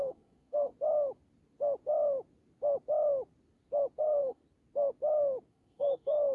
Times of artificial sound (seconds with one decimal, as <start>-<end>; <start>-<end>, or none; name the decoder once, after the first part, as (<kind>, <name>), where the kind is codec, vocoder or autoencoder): 0.0-0.7 (codec, SNAC); 4.0-4.4; 5.5-6.3